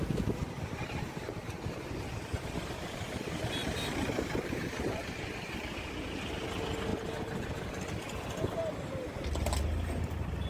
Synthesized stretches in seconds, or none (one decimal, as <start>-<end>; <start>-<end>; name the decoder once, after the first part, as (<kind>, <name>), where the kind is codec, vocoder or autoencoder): 1.4-6.4 (vocoder, BigVGAN v2)